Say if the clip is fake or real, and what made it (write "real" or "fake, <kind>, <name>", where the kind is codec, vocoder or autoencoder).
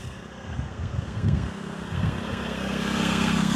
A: fake, codec, SNAC